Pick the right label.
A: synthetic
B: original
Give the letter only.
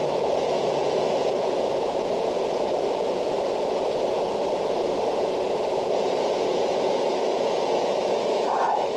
A